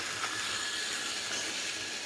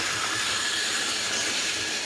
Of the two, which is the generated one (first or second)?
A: second